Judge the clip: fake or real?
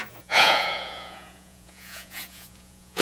fake